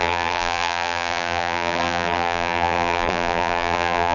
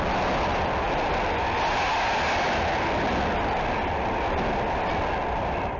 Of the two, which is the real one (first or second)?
second